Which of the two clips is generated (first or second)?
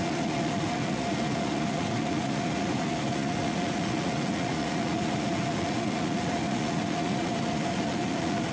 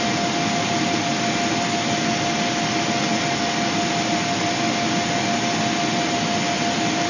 first